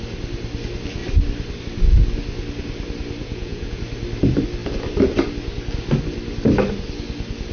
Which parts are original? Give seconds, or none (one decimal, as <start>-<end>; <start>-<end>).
0.0-3.2; 3.8-7.5